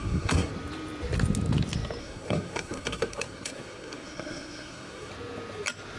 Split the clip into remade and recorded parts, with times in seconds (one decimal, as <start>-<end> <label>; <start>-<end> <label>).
0.0-0.5 remade; 0.5-2.0 recorded; 2.0-5.1 remade; 5.1-6.0 recorded